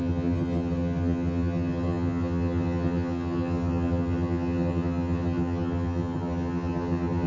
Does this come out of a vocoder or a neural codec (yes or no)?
yes